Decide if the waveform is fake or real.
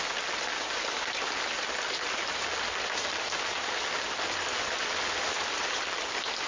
real